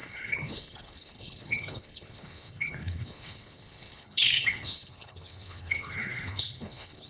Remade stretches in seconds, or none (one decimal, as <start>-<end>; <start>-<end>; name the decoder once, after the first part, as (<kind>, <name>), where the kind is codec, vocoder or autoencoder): 0.0-7.1 (codec, HILCodec)